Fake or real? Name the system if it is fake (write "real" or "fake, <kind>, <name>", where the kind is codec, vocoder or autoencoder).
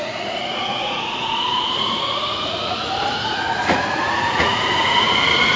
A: fake, vocoder, Vocos